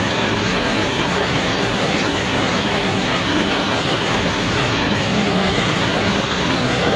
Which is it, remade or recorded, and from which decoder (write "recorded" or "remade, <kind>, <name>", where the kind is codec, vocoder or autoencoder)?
remade, codec, SNAC